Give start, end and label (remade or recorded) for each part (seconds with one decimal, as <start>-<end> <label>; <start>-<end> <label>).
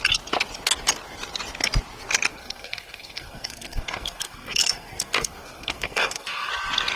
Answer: 0.0-2.3 recorded; 2.3-6.5 remade; 6.5-7.0 recorded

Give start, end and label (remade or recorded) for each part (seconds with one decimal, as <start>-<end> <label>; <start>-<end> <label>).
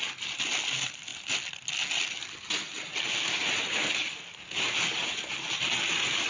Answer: 0.0-6.3 recorded